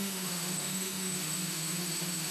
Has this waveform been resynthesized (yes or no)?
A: yes